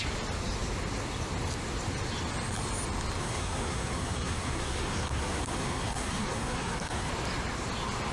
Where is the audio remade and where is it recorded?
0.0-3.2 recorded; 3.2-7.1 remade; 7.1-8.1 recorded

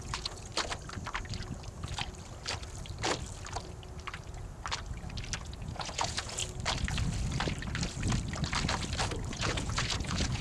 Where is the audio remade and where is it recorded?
0.0-0.5 remade; 0.5-5.4 recorded; 5.4-6.4 remade; 6.4-9.3 recorded; 9.3-10.4 remade

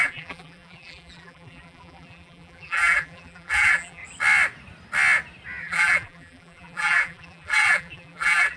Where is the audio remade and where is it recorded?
0.0-4.0 remade; 4.0-5.6 recorded; 5.6-8.6 remade

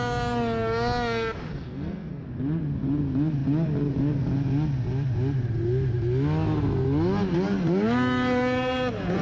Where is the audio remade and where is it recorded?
0.0-1.5 recorded; 1.5-2.2 remade; 2.2-9.2 recorded

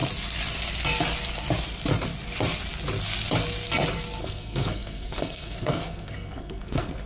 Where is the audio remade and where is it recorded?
0.0-4.2 recorded; 4.2-7.1 remade

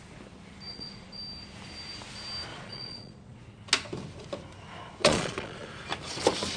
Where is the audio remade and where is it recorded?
0.0-0.7 recorded; 0.7-1.2 remade; 1.2-2.5 recorded; 2.5-3.4 remade; 3.4-5.0 recorded; 5.0-5.7 remade; 5.7-6.6 recorded